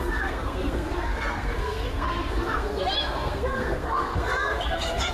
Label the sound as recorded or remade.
remade